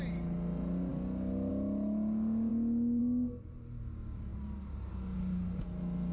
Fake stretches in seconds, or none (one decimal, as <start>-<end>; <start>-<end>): 4.3-4.9